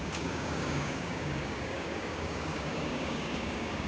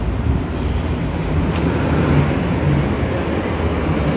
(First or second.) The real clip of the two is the second